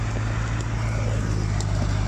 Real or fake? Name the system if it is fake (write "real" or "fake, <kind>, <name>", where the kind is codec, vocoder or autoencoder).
real